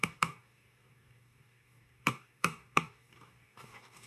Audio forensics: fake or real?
fake